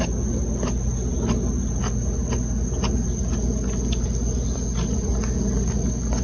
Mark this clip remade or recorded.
recorded